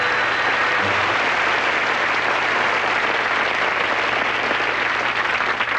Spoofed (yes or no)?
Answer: no